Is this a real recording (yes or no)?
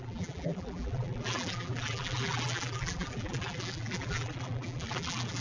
no